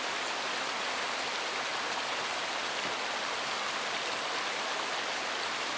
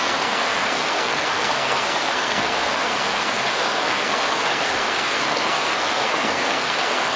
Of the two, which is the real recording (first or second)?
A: first